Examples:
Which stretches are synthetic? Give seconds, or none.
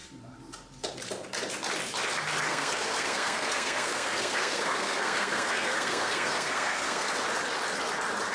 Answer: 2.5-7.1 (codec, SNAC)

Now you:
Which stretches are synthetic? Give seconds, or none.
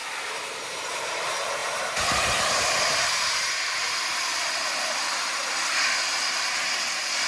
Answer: 1.6-3.5 (vocoder, BigVGAN v2)